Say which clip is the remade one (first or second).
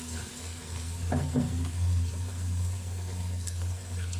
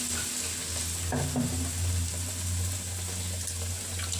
first